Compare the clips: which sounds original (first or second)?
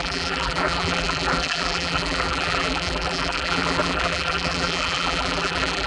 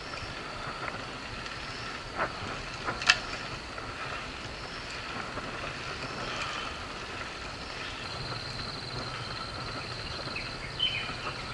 second